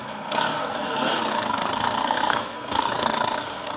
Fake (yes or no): yes